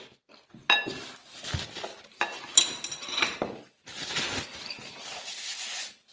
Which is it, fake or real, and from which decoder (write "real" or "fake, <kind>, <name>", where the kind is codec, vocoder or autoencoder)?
real